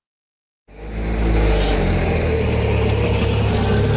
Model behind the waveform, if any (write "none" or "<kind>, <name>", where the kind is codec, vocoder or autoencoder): none